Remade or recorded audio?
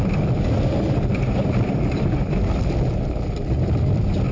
remade